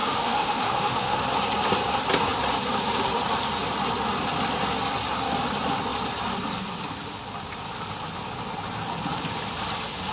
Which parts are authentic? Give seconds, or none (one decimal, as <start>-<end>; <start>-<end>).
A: 1.2-10.1